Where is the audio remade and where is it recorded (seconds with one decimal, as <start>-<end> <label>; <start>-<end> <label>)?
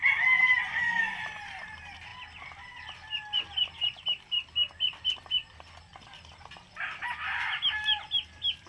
0.0-8.7 recorded